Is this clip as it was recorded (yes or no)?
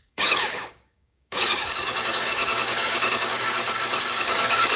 no